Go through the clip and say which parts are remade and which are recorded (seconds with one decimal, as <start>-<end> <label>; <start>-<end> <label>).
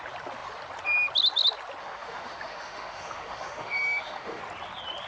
0.0-1.8 recorded; 1.8-4.4 remade; 4.4-5.1 recorded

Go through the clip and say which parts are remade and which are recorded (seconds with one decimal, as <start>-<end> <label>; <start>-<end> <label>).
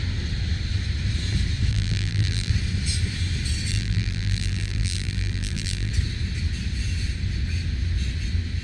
0.0-1.7 recorded; 1.7-2.5 remade; 2.5-3.7 recorded; 3.7-5.9 remade; 5.9-8.6 recorded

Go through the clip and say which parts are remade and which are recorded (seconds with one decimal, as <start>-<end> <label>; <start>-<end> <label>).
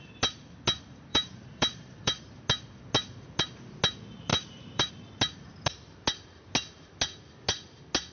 0.0-1.1 recorded; 1.1-2.4 remade; 2.4-4.3 recorded; 4.3-4.9 remade; 4.9-8.1 recorded